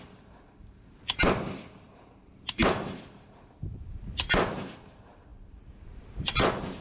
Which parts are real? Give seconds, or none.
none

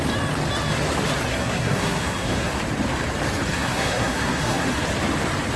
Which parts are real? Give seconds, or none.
0.0-1.3; 2.5-3.5; 4.8-5.6

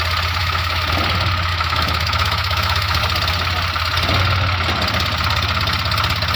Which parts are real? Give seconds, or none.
0.0-0.4; 0.9-1.5; 3.0-6.4